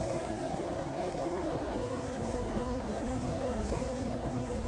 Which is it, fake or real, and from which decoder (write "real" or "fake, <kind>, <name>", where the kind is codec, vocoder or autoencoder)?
fake, codec, SNAC